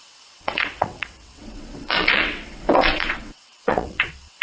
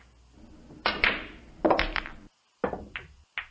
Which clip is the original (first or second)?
second